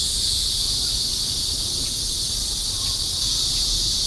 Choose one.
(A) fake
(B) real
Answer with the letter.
A